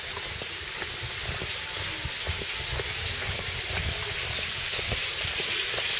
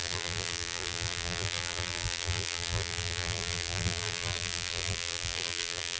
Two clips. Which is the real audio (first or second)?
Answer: first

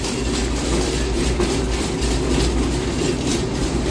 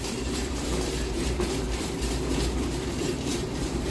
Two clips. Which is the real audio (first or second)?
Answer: first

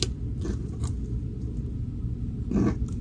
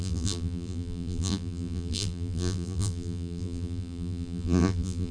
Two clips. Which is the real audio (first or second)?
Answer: first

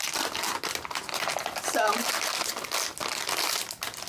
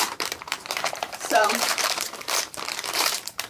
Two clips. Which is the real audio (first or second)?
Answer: first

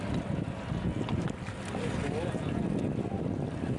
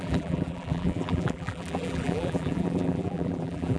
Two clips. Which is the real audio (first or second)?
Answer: first